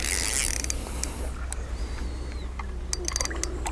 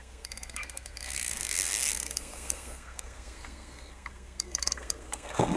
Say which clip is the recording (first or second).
first